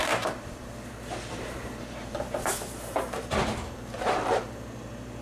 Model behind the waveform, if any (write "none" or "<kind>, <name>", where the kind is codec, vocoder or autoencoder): vocoder, BigVGAN v2